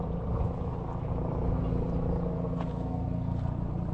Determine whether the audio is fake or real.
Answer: real